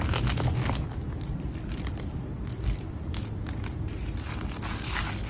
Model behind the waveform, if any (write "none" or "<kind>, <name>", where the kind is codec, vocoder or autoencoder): none